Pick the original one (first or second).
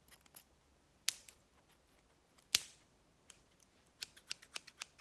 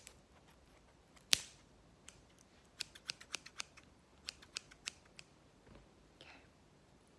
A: first